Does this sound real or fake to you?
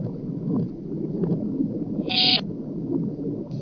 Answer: real